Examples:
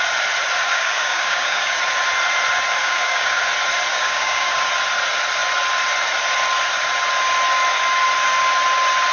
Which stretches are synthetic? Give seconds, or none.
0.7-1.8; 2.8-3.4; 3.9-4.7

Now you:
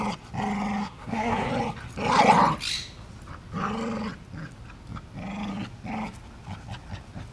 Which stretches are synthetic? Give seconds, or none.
0.8-1.5